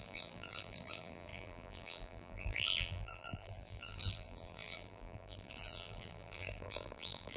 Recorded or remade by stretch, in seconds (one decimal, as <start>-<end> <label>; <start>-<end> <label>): 0.0-7.4 remade